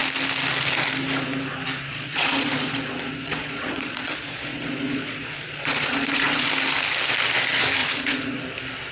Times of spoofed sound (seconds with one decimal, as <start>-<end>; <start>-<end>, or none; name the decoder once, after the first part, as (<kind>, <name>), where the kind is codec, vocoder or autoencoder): 1.9-6.5 (vocoder, Vocos); 7.8-8.4